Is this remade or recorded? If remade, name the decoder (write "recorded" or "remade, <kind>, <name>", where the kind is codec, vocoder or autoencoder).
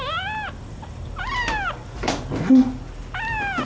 recorded